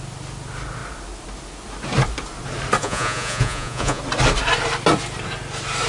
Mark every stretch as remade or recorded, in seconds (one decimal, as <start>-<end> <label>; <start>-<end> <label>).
0.0-2.8 recorded; 2.8-4.0 remade; 4.0-5.9 recorded